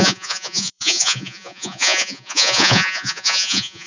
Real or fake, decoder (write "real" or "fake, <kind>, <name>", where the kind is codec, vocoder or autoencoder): fake, vocoder, Vocos